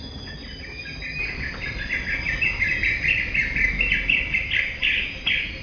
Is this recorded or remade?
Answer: recorded